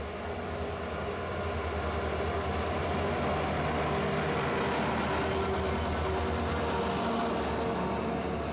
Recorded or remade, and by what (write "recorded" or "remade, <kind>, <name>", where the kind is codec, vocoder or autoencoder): recorded